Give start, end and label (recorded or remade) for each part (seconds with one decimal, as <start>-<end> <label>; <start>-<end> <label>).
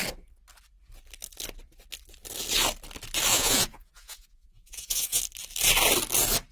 0.0-3.3 recorded; 3.3-5.2 remade; 5.2-6.5 recorded